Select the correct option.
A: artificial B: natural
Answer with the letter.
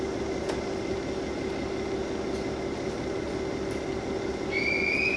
B